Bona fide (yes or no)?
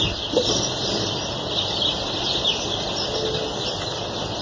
yes